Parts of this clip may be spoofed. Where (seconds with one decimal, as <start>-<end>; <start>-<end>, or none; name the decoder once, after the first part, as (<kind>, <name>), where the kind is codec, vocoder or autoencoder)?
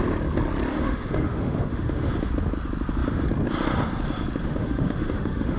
0.7-2.1 (autoencoder, DAC-VAE); 4.4-5.6